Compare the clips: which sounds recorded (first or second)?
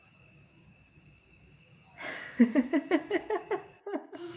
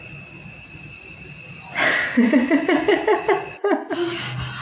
second